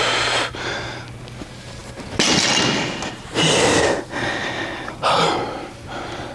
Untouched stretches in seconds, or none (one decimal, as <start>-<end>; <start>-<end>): 0.0-6.3